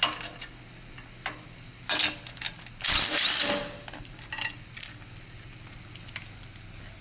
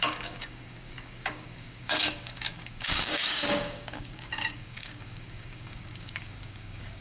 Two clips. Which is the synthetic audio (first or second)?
second